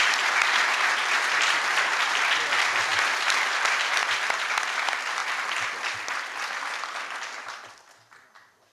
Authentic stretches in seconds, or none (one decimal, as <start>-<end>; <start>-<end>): 0.0-8.7

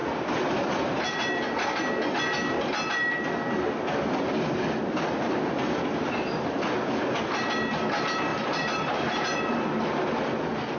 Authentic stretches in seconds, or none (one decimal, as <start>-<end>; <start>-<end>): 0.0-8.3; 10.2-10.8

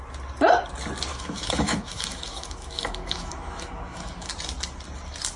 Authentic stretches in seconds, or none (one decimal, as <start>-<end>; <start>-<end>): 0.0-1.1; 4.3-5.4